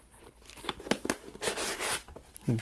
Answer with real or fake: real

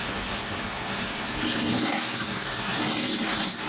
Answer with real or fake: fake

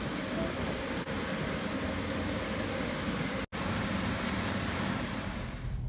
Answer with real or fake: real